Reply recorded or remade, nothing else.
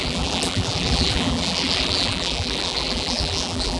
remade